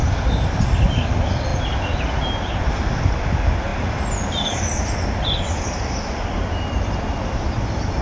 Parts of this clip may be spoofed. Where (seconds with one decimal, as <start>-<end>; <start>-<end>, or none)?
none